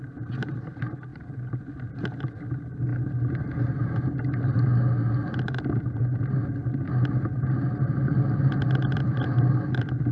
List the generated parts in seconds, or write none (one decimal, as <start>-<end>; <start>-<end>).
0.0-1.1; 2.0-4.7; 8.4-10.1